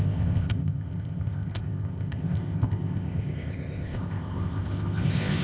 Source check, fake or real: fake